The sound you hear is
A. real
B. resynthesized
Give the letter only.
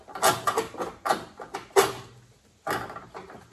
A